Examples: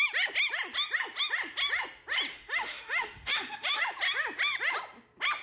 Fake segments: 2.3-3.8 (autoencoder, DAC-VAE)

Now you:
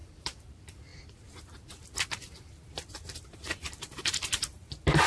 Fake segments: 0.0-5.1 (vocoder, BigVGAN v2)

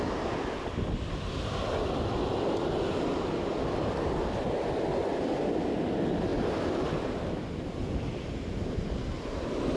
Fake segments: none

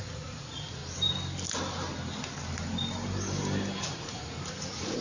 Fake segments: 0.0-0.8 (vocoder, Vocos); 3.8-5.0